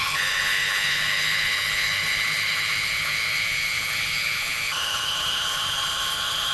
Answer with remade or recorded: remade